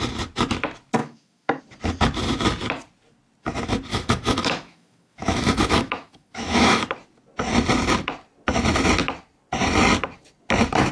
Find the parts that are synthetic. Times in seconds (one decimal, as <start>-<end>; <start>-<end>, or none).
1.0-1.6; 3.9-6.8